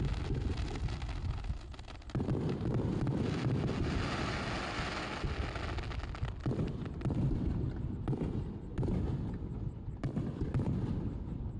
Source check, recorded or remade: recorded